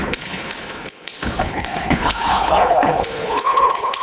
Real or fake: fake